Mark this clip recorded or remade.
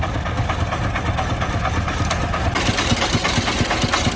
recorded